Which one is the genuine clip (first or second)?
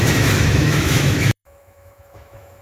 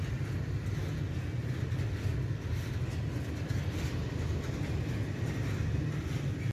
second